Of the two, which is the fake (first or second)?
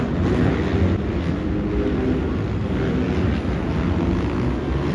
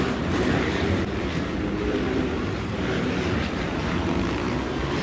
second